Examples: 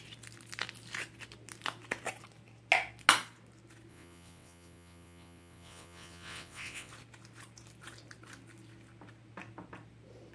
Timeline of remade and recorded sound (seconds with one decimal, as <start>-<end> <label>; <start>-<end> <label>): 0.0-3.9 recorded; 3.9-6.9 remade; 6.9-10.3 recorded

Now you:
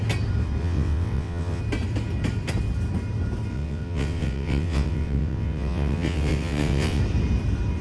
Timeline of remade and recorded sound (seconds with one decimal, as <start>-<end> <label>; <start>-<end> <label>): 0.0-0.6 recorded; 0.6-1.6 remade; 1.6-3.5 recorded; 3.5-7.0 remade; 7.0-7.8 recorded

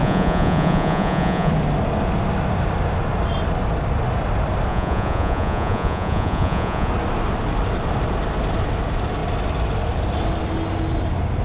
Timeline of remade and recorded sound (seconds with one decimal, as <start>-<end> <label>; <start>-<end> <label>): 0.0-1.5 remade; 1.5-4.7 recorded; 4.7-6.9 remade; 6.9-11.4 recorded

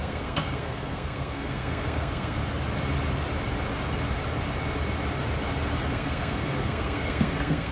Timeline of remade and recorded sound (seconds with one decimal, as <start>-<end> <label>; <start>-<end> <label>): 0.0-2.4 remade; 2.4-5.9 recorded; 5.9-7.7 remade

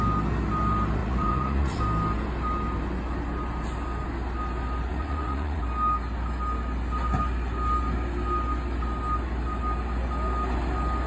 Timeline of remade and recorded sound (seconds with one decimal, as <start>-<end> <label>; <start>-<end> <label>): 0.0-1.0 recorded; 1.0-1.8 remade; 1.8-4.9 recorded; 4.9-5.6 remade; 5.6-11.1 recorded

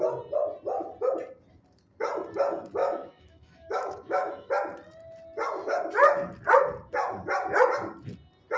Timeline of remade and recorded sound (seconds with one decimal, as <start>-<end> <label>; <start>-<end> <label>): 0.0-2.8 recorded; 2.8-4.5 remade; 4.5-8.6 recorded